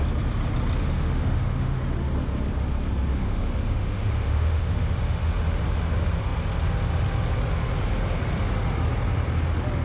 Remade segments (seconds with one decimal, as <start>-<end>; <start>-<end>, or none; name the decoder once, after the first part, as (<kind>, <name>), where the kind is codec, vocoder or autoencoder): 0.8-1.8 (autoencoder, DAC-VAE); 3.1-5.3